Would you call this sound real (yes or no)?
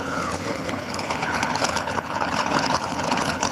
no